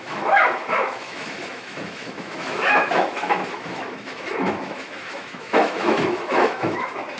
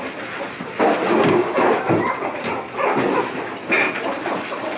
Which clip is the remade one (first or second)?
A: first